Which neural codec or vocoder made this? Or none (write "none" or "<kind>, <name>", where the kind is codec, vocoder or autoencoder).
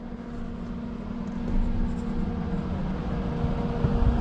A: none